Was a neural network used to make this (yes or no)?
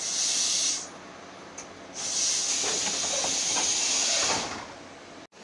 no